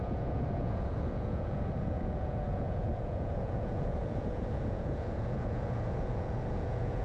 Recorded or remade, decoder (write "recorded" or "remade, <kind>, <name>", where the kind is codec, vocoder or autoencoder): remade, vocoder, Vocos